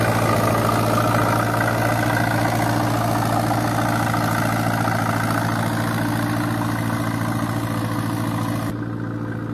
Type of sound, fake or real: real